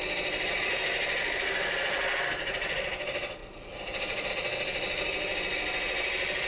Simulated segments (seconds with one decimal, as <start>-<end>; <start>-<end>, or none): none